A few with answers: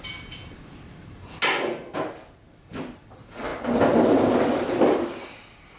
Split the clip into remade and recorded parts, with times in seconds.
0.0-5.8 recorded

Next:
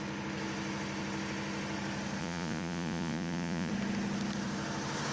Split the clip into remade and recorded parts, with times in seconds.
0.0-2.2 recorded; 2.2-3.7 remade; 3.7-5.1 recorded

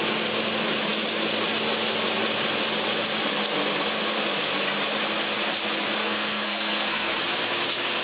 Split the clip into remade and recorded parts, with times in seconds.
0.0-6.0 recorded; 6.0-7.2 remade; 7.2-8.0 recorded

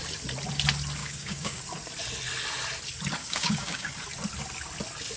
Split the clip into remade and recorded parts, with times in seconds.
0.0-1.0 recorded; 1.0-1.6 remade; 1.6-3.2 recorded; 3.2-3.9 remade; 3.9-5.2 recorded

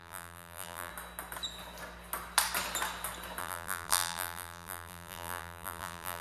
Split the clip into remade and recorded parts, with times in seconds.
0.0-0.9 remade; 0.9-3.4 recorded; 3.4-6.2 remade

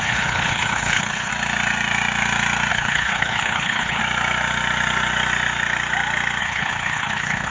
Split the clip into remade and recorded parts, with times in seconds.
0.0-1.3 remade; 1.3-2.7 recorded; 2.7-4.0 remade; 4.0-6.4 recorded; 6.4-7.5 remade